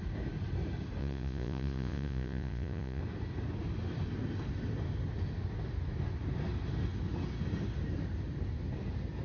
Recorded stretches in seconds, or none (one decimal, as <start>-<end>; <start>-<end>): 0.0-1.0; 3.0-9.2